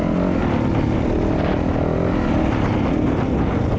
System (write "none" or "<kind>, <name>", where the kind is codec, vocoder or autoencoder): none